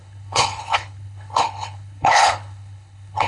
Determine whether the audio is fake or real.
fake